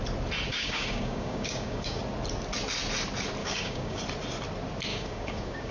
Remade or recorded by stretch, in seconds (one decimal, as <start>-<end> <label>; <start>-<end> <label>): 0.0-0.5 recorded; 0.5-2.0 remade; 2.0-3.4 recorded; 3.4-4.0 remade; 4.0-4.9 recorded; 4.9-5.7 remade